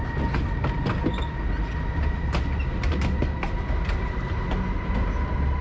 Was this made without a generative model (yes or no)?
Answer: yes